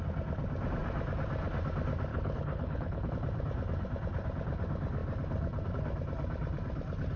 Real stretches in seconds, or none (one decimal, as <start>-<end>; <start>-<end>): 0.0-2.1; 3.1-7.2